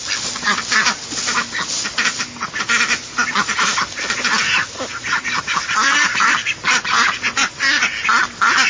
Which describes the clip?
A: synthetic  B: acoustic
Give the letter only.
B